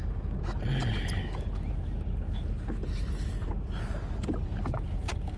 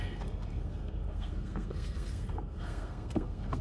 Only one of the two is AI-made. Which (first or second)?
second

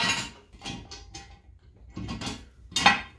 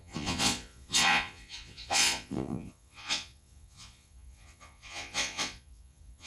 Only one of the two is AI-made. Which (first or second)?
second